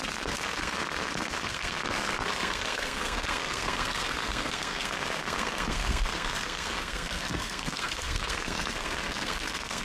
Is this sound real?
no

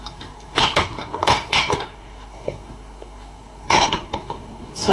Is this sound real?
no